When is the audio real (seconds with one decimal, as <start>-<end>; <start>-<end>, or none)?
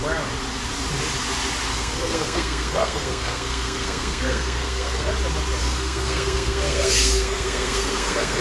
0.0-1.7; 5.1-5.6